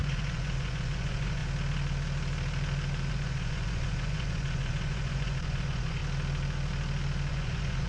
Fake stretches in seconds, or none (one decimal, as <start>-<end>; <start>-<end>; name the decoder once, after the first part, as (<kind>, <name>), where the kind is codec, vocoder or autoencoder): 0.0-1.4 (vocoder, Vocos); 3.1-6.0; 7.3-7.9